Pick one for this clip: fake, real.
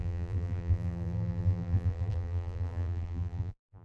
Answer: fake